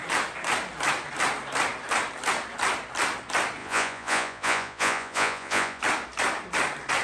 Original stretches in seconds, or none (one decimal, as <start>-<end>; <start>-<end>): 0.0-3.6; 5.8-7.0